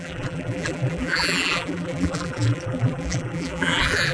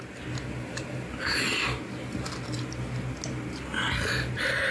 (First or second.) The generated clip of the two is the first